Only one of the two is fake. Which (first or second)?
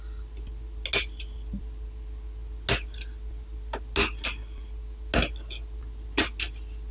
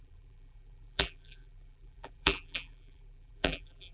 second